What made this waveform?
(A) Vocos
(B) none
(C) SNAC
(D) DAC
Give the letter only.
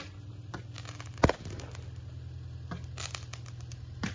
B